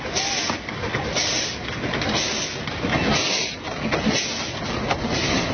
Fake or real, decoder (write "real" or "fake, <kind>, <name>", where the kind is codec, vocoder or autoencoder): real